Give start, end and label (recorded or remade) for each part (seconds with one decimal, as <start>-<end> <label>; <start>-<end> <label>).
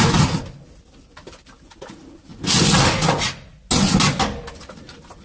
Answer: 0.0-5.2 recorded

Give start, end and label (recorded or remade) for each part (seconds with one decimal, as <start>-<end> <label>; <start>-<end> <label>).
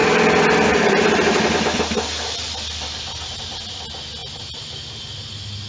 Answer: 0.0-3.4 remade; 3.4-5.7 recorded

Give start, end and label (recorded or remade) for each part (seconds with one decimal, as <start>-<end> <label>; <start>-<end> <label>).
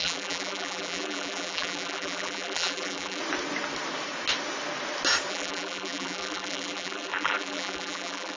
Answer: 0.0-3.2 remade; 3.2-5.3 recorded; 5.3-8.4 remade